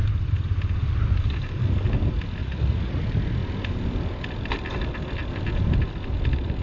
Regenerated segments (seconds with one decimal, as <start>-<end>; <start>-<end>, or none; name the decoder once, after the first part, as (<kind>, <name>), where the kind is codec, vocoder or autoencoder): 2.4-3.0 (vocoder, Vocos)